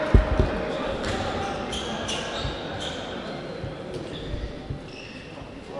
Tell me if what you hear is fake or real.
real